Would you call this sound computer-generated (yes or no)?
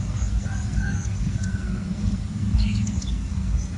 yes